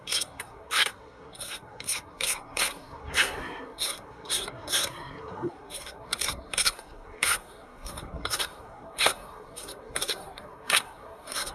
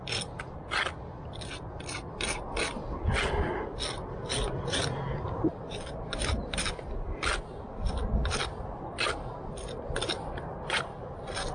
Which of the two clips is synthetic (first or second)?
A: first